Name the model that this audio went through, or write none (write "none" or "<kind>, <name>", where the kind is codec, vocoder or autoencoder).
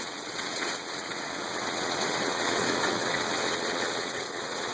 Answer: vocoder, WaveNeXt